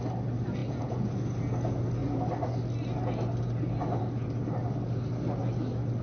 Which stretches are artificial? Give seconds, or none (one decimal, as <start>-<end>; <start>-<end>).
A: 0.6-1.1